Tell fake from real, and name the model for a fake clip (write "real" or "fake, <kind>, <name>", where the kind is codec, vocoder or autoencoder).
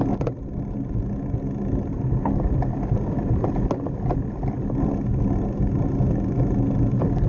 real